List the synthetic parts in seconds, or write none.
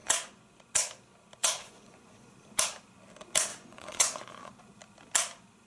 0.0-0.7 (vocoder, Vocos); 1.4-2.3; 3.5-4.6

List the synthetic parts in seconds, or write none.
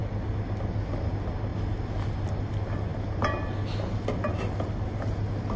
none